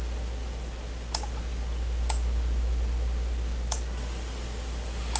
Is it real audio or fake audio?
real